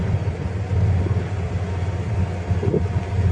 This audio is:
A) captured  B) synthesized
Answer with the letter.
A